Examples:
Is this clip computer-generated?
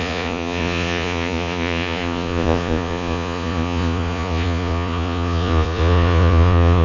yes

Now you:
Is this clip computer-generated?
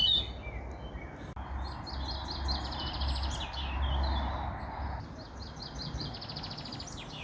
no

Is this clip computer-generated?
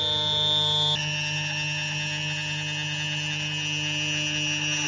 no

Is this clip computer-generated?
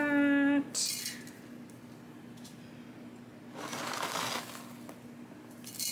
no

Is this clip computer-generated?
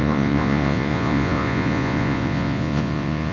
yes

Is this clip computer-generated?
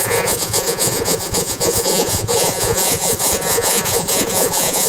yes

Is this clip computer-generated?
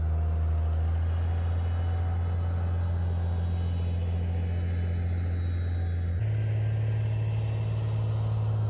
no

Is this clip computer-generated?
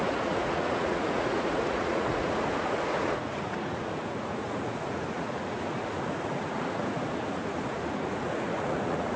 yes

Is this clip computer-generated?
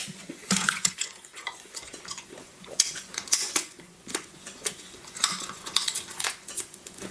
yes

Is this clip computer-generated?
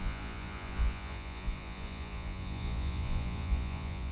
yes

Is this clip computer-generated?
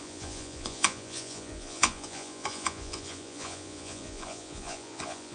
yes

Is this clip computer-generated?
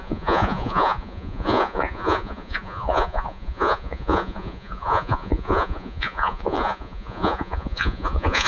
yes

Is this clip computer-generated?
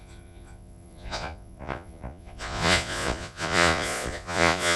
yes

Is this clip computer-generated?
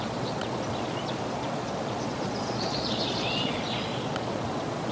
yes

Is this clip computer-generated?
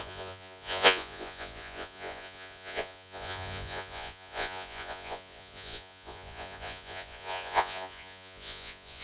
yes